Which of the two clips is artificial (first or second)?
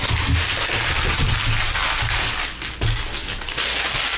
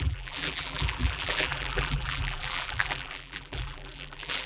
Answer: second